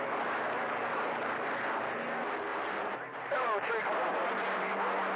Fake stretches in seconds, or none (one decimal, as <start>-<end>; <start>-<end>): 2.5-3.7

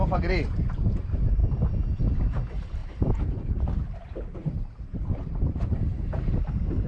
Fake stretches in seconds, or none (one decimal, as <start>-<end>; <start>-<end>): 2.8-3.6; 4.4-6.4

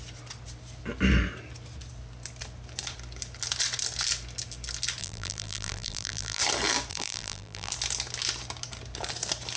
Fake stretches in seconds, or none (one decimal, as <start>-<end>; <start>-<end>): 5.0-6.4; 6.9-7.7

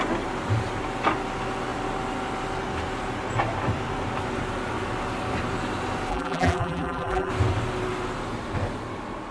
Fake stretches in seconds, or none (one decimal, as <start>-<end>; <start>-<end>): 6.1-7.3

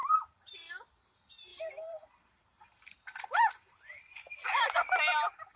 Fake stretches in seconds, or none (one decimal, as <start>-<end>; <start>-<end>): 0.0-0.7; 1.5-3.5

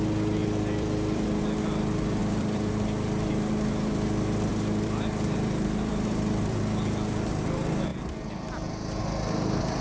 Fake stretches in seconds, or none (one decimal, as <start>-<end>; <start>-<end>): 0.4-1.4; 2.2-2.7; 4.5-6.6

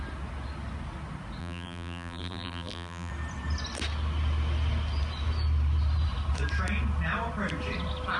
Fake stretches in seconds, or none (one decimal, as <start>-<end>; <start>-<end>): 1.4-3.1

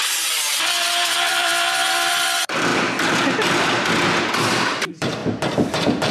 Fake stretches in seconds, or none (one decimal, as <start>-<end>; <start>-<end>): 0.0-1.5; 2.1-5.2